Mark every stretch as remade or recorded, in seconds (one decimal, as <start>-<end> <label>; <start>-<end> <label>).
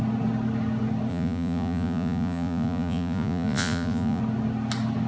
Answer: 0.0-1.1 recorded; 1.1-4.2 remade; 4.2-5.1 recorded